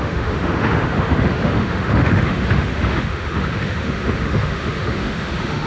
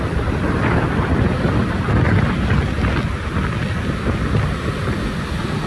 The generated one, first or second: first